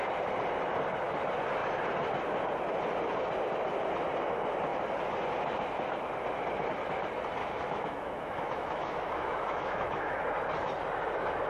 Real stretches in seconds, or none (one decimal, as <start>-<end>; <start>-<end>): 0.0-7.4; 10.2-11.5